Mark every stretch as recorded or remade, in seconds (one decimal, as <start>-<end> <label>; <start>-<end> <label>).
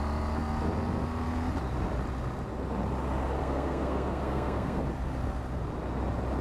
0.0-3.4 recorded; 3.4-4.8 remade; 4.8-6.4 recorded